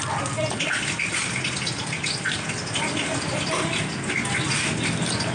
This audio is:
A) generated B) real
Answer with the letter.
B